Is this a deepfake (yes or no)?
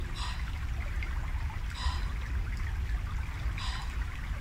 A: no